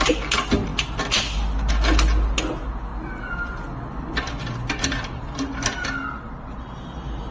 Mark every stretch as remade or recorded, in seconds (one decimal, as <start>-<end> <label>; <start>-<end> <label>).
0.0-7.3 recorded